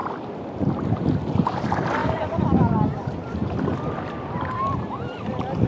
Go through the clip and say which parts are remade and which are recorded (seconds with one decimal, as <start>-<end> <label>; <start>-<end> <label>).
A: 0.0-5.7 recorded